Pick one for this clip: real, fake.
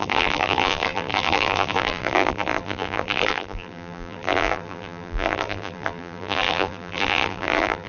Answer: fake